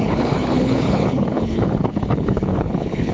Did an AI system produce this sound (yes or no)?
yes